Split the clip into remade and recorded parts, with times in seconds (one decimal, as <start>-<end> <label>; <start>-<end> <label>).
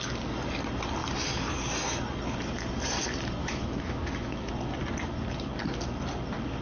0.0-3.4 recorded; 3.4-4.5 remade; 4.5-6.6 recorded